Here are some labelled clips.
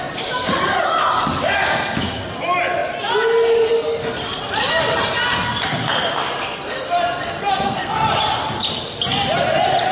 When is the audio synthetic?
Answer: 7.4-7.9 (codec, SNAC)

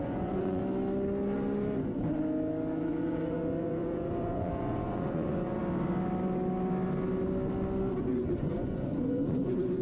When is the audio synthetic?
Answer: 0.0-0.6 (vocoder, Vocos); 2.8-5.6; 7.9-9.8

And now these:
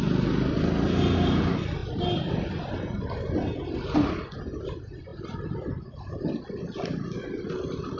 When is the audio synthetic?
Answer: none

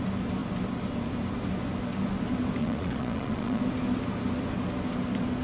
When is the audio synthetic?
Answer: 2.6-3.6 (vocoder, Vocos)